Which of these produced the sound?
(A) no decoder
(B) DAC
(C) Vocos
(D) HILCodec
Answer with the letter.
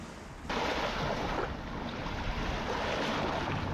A